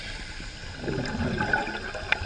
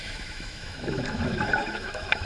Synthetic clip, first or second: second